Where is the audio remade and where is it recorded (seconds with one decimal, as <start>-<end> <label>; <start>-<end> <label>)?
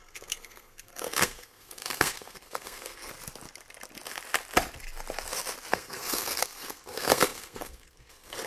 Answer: 0.0-3.1 remade; 3.1-5.7 recorded; 5.7-8.5 remade